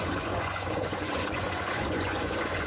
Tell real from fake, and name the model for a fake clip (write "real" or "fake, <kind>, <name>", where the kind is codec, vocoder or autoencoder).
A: fake, vocoder, Vocos